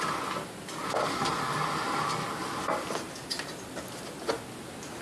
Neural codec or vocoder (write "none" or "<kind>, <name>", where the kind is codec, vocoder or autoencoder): none